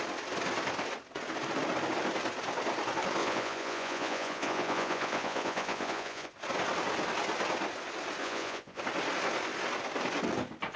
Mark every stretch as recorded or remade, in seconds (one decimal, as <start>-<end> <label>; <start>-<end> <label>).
0.0-3.2 recorded; 3.2-6.3 remade; 6.3-8.2 recorded; 8.2-8.8 remade; 8.8-10.8 recorded